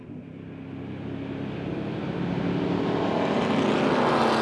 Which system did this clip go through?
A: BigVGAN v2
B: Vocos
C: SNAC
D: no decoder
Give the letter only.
D